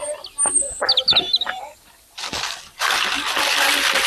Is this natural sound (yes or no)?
yes